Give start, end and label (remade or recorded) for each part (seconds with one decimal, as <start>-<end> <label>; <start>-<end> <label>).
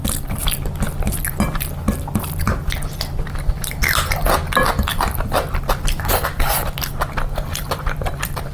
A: 0.0-0.4 remade; 0.4-3.5 recorded; 3.5-8.5 remade